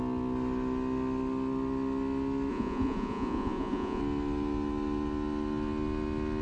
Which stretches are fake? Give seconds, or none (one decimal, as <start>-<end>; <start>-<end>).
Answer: 2.5-4.0